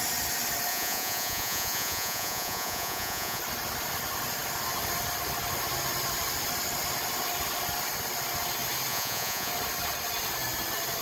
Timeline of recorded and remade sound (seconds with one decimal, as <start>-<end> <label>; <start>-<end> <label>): 0.0-0.7 recorded; 0.7-3.4 remade; 3.4-8.9 recorded; 8.9-9.5 remade; 9.5-11.0 recorded